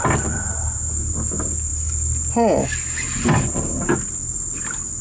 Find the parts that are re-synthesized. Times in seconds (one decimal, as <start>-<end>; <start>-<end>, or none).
none